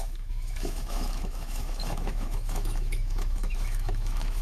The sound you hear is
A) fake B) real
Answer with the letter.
A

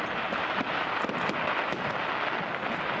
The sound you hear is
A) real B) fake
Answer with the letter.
A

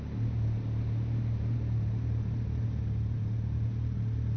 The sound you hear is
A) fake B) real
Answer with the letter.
B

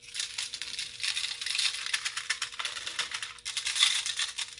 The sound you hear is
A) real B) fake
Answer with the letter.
A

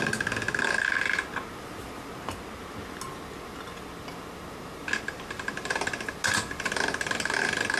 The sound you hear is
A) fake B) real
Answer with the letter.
B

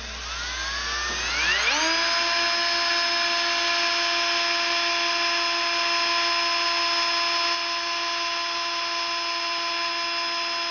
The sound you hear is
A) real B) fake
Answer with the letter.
A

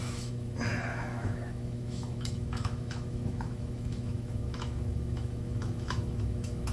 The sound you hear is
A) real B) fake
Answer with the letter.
B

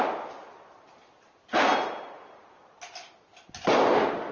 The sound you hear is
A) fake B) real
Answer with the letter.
B